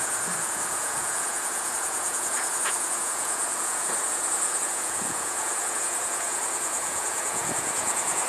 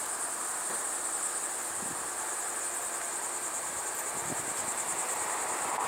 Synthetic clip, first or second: first